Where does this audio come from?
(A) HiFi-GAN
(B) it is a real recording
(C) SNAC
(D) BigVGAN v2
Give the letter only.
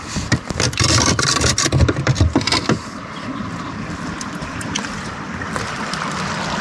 D